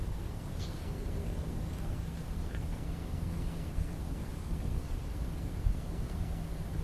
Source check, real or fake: fake